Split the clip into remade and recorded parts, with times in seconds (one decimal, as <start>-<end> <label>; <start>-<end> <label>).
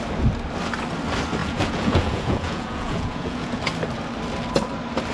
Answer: 0.0-1.4 recorded; 1.4-3.6 remade; 3.6-5.1 recorded